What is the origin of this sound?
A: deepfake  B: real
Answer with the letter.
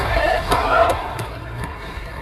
A